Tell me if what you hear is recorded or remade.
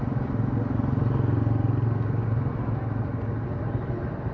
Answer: recorded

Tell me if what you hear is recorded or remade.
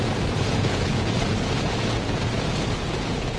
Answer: remade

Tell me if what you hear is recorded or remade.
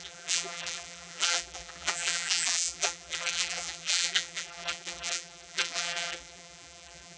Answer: remade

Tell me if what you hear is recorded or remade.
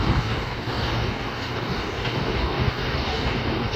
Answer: remade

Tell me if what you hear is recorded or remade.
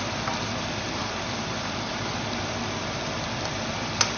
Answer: recorded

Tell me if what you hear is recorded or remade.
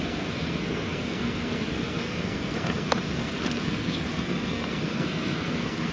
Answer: remade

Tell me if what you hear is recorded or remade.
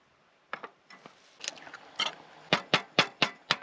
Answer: recorded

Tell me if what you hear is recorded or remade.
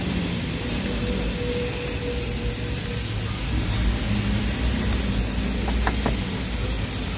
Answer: recorded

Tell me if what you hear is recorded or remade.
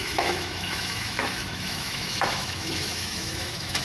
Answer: remade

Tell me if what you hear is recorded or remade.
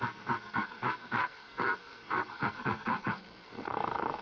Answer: remade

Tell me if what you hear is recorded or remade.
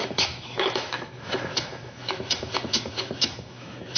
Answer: remade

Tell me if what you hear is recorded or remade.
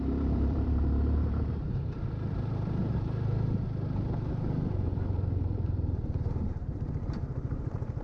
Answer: remade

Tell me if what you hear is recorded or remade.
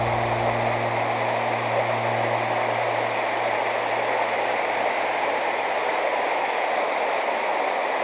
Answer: recorded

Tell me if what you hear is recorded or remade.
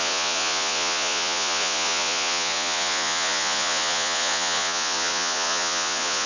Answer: remade